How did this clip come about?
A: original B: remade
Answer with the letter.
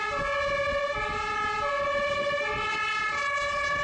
A